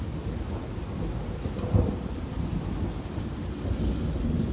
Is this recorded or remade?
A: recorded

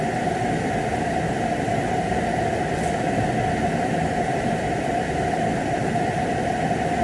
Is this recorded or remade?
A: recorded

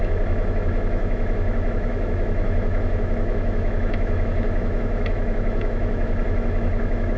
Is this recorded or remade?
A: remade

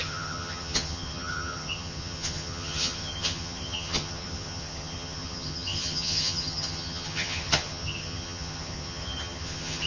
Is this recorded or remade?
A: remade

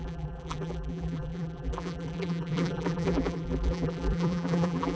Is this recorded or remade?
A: remade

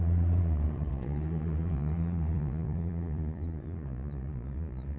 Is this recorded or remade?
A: remade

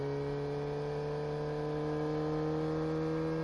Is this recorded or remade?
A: recorded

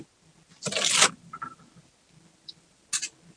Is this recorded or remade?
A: recorded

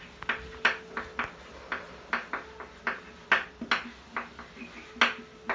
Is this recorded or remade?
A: recorded